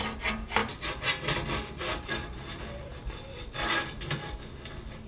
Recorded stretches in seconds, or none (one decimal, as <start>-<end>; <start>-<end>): 0.0-5.1